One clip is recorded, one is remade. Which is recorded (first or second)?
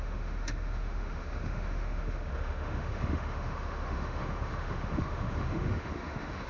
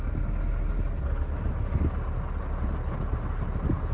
second